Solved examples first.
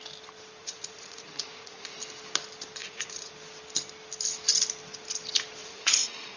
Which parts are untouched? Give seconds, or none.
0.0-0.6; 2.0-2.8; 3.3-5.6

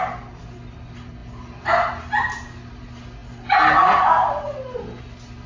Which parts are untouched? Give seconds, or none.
0.0-5.5

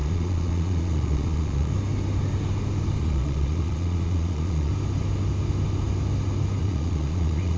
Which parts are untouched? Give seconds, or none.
1.7-3.0; 4.7-6.6

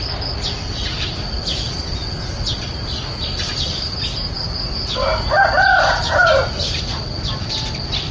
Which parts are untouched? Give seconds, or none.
0.0-8.1

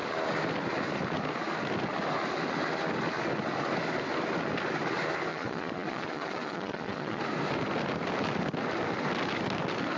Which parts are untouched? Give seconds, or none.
0.0-5.3; 7.2-10.0

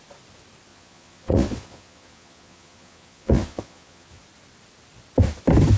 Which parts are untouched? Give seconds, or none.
0.0-0.7; 4.2-5.8

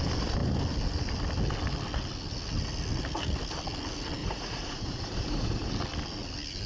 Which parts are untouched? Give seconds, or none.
0.0-4.2; 5.7-6.7

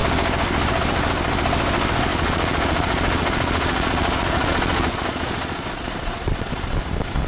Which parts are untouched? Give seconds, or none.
0.0-2.1; 6.5-7.3